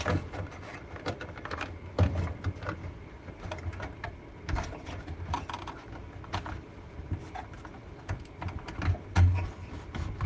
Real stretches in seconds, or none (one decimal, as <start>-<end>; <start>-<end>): 0.0-10.3